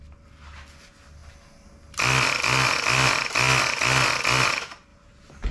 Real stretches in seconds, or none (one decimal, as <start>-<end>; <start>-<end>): 0.0-4.9